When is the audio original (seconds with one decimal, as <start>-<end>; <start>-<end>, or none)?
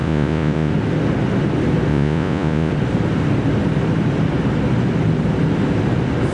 0.7-1.9; 2.7-6.3